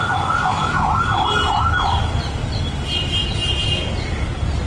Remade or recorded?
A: recorded